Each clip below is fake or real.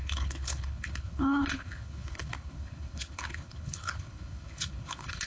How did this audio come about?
fake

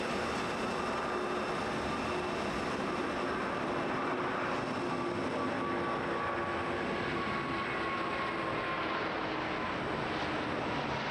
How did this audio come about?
real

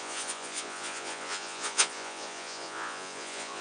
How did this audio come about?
fake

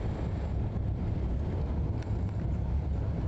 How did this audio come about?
real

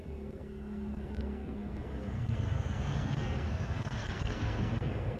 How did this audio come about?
fake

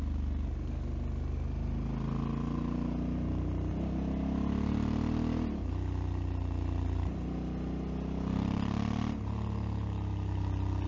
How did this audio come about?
real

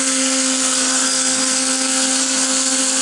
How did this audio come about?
fake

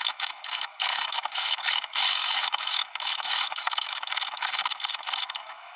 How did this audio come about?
fake